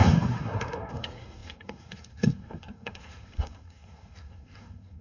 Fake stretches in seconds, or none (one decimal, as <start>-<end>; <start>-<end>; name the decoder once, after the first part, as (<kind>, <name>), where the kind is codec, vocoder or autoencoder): 0.0-5.0 (codec, SNAC)